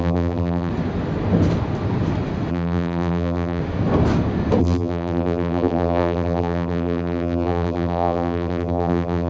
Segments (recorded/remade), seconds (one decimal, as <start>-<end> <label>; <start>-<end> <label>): 0.0-0.7 remade; 0.7-2.5 recorded; 2.5-3.6 remade; 3.6-4.6 recorded; 4.6-9.3 remade